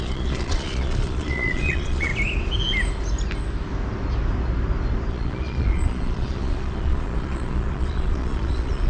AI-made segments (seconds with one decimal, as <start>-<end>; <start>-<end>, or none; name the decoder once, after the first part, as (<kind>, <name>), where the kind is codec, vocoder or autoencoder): 0.0-2.1 (vocoder, Vocos); 5.1-8.9